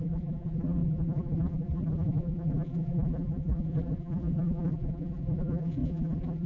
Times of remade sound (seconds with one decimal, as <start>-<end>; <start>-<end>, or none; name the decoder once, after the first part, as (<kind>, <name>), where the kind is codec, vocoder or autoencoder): 0.0-6.5 (vocoder, BigVGAN v2)